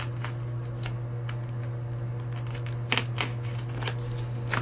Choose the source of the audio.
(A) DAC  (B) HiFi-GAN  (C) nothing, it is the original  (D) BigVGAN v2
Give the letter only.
C